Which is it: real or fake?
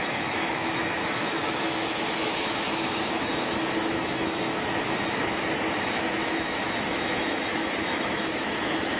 fake